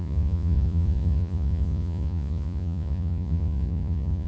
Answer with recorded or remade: remade